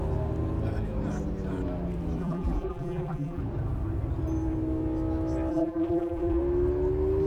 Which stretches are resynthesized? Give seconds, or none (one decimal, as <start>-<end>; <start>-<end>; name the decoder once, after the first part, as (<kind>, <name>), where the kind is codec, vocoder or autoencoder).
2.2-3.4 (vocoder, BigVGAN v2); 5.5-6.4